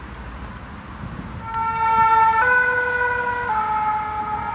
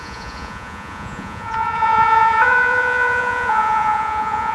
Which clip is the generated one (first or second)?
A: second